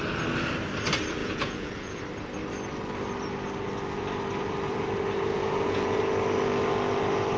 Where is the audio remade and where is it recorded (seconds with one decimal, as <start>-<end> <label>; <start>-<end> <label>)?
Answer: 0.0-1.2 recorded; 1.2-2.0 remade; 2.0-5.3 recorded; 5.3-6.0 remade; 6.0-7.4 recorded